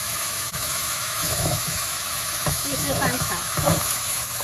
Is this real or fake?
fake